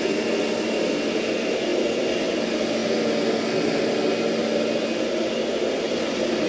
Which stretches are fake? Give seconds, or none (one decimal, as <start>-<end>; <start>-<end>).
5.5-6.5